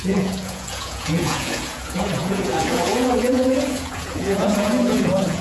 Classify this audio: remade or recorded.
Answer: remade